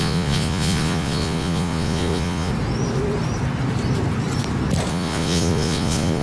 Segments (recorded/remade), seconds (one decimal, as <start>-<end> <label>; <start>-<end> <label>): 0.0-2.5 remade; 2.5-4.9 recorded; 4.9-6.2 remade